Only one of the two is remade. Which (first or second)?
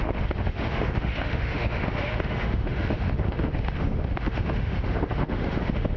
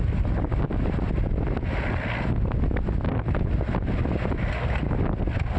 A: first